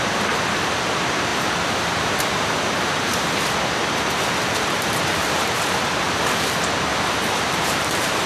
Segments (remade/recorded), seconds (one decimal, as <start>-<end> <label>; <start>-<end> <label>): 0.0-1.3 recorded; 1.3-2.6 remade; 2.6-5.1 recorded; 5.1-6.2 remade; 6.2-6.9 recorded; 6.9-8.3 remade

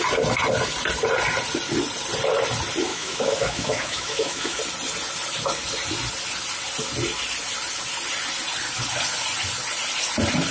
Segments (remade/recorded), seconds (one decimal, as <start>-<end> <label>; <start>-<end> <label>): 0.0-2.9 recorded; 2.9-4.6 remade; 4.6-10.5 recorded

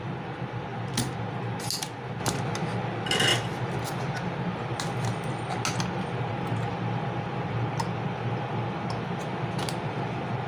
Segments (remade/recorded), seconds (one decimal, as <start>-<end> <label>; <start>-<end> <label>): 0.0-10.5 recorded

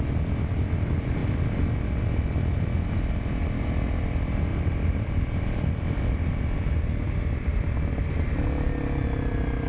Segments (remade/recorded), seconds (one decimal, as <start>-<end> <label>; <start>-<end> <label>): 0.0-4.5 recorded; 4.5-6.0 remade; 6.0-9.7 recorded

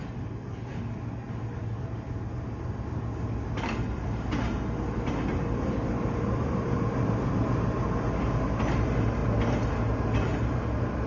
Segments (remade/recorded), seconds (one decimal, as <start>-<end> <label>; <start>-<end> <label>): 0.0-11.1 recorded

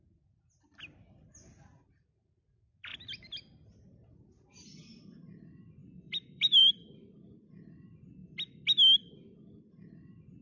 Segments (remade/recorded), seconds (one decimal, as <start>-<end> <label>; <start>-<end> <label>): 0.0-5.8 recorded; 5.8-7.5 remade; 7.5-10.4 recorded

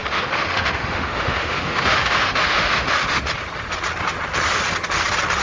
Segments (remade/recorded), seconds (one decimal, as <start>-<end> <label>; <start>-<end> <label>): 0.0-3.2 remade; 3.2-5.4 recorded